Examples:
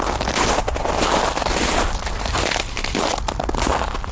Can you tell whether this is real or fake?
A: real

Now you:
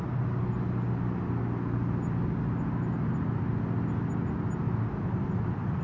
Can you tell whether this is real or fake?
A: real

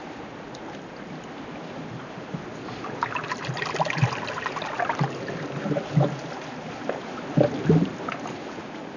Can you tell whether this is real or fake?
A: real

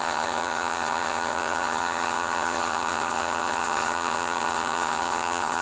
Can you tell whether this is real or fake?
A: fake